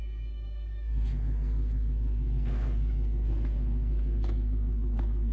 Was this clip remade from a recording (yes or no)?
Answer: yes